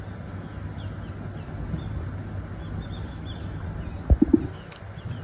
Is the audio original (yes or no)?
yes